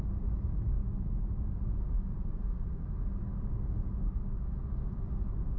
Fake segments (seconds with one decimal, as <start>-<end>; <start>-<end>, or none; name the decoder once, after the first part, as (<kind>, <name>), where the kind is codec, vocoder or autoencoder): none